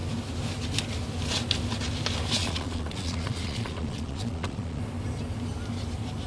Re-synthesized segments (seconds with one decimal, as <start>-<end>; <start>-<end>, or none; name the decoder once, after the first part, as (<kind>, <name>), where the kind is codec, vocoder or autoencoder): 2.4-4.8 (vocoder, Vocos)